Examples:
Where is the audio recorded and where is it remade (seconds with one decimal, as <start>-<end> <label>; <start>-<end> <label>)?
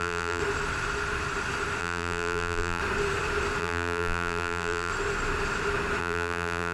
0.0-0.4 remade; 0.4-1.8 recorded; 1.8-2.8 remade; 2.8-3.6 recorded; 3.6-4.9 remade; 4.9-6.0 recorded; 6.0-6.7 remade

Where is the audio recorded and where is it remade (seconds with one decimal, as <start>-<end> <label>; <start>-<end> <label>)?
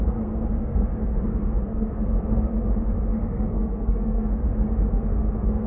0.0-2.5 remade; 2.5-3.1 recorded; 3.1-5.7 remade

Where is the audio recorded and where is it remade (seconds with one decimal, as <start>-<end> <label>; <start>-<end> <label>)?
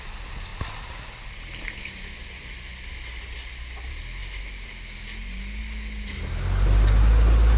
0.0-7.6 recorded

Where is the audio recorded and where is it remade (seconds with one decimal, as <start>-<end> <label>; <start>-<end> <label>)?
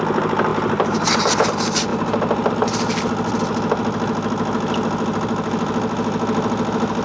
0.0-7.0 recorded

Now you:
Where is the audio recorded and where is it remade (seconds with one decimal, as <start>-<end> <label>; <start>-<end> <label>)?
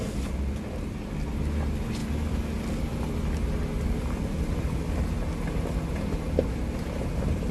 0.0-7.5 recorded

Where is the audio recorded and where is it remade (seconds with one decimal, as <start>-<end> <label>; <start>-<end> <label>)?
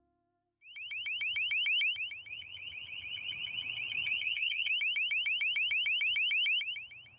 0.0-2.3 recorded; 2.3-4.7 remade; 4.7-7.2 recorded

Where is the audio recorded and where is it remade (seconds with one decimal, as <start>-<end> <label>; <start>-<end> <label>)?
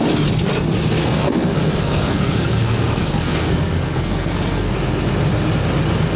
0.0-1.0 recorded; 1.0-4.7 remade; 4.7-6.2 recorded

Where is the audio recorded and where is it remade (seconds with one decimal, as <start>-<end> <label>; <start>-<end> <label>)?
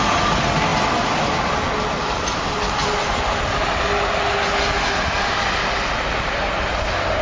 0.0-7.2 recorded